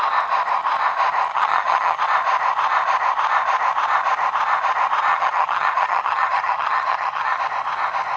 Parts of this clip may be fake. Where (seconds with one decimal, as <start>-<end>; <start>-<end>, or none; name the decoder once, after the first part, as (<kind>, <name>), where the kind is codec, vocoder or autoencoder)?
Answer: 1.3-2.0 (vocoder, HiFi-GAN); 5.1-7.4